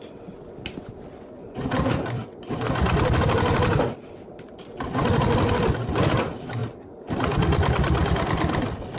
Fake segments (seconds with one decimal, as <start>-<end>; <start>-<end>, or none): 0.0-2.2; 4.6-9.0